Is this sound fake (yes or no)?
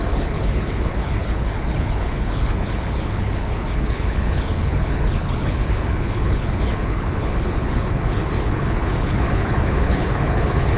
yes